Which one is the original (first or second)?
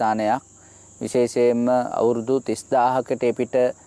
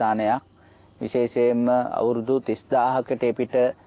first